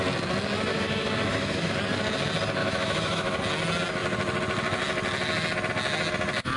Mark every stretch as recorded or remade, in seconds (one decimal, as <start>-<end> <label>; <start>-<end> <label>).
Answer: 0.0-0.7 recorded; 0.7-1.7 remade; 1.7-2.6 recorded; 2.6-3.4 remade; 3.4-6.6 recorded